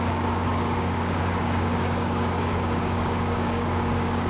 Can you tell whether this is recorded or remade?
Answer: remade